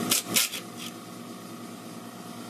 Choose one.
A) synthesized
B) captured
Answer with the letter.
B